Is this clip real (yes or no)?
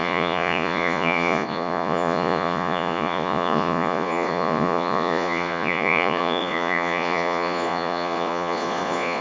no